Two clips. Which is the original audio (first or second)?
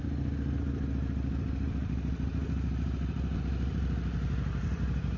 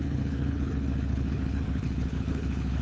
first